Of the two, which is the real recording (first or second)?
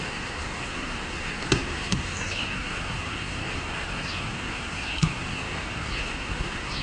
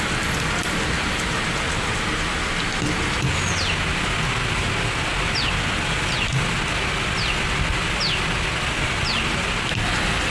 second